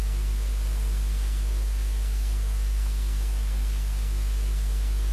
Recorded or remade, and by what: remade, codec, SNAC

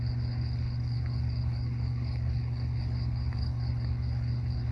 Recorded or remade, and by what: remade, codec, HILCodec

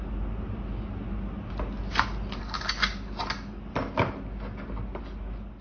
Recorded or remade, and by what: recorded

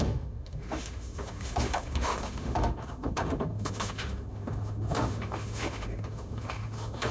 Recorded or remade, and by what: remade, autoencoder, DAC-VAE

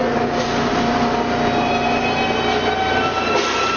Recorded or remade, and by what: recorded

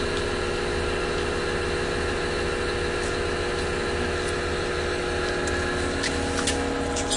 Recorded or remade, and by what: recorded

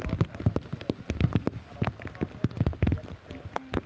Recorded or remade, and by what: recorded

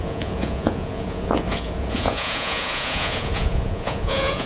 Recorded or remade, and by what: remade, vocoder, Vocos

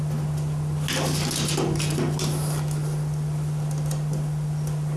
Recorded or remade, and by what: recorded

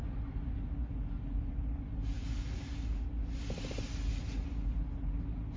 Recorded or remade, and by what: recorded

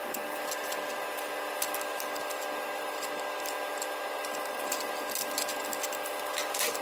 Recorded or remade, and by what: recorded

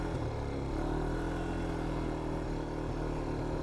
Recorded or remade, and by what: recorded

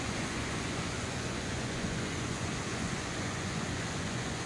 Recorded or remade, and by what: remade, vocoder, Vocos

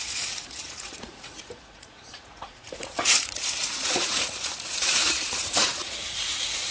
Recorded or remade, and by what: remade, vocoder, Vocos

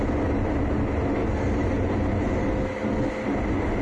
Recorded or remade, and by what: recorded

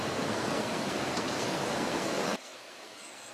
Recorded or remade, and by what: remade, codec, SNAC